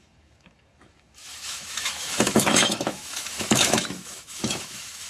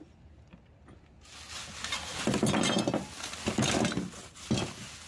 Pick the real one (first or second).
second